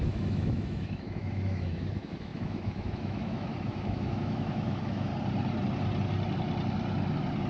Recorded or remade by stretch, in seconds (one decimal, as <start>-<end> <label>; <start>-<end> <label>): 0.0-5.1 remade; 5.1-7.5 recorded